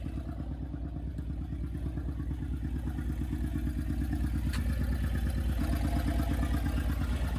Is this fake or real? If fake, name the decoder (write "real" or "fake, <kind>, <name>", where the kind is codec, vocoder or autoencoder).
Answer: real